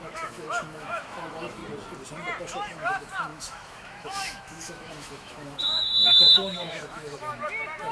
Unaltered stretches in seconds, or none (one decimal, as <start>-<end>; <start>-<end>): 1.6-2.4